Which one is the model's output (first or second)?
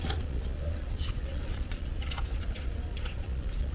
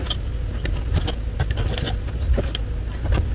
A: first